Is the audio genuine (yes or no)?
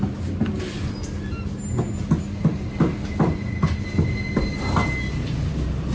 yes